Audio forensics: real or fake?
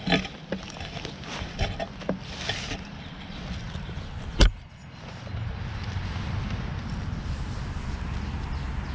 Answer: real